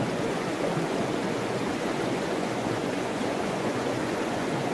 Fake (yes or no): yes